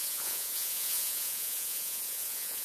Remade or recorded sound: remade